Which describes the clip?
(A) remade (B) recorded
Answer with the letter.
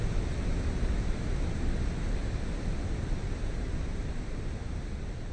B